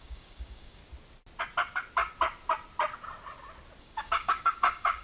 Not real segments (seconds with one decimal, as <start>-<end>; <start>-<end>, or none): 0.0-0.8; 3.8-5.0